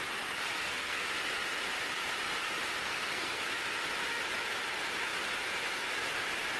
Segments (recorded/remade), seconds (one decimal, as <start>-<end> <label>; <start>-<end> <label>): 0.0-0.6 recorded; 0.6-1.1 remade; 1.1-2.8 recorded; 2.8-3.4 remade; 3.4-6.6 recorded